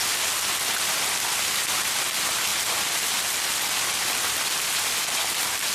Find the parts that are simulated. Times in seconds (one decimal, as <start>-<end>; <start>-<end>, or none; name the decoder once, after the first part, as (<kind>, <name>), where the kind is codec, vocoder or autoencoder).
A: none